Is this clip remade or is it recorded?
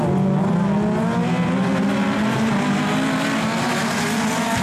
recorded